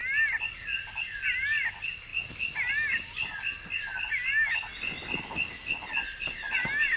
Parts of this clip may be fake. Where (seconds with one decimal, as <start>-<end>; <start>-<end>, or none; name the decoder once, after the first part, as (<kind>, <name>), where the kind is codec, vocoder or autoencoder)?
none